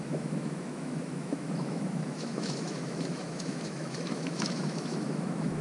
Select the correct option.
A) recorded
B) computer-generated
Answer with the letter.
B